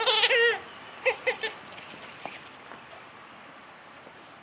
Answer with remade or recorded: recorded